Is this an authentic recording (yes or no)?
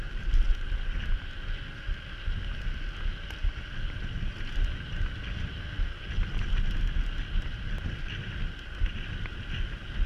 yes